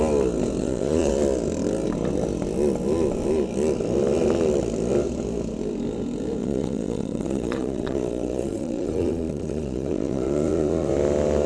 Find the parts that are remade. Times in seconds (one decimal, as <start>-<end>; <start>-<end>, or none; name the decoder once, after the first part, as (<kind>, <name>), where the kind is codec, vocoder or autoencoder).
0.6-1.1 (vocoder, Vocos); 6.4-10.9